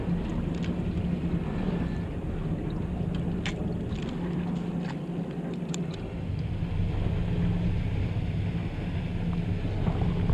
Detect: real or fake real